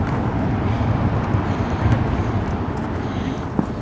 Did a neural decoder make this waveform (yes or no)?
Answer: no